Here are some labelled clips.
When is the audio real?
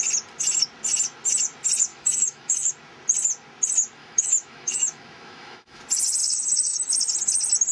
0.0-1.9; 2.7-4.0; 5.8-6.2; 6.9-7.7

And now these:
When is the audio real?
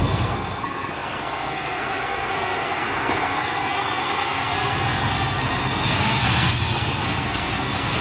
none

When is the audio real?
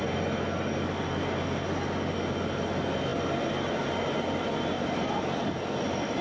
0.0-6.2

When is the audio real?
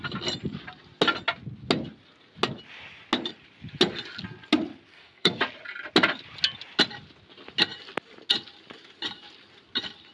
0.0-4.9; 5.4-10.1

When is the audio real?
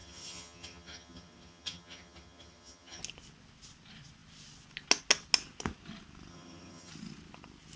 3.0-6.3; 6.9-7.8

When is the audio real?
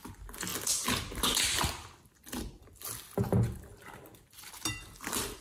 0.0-5.4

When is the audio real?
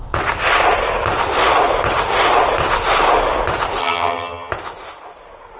0.0-3.8; 4.5-5.6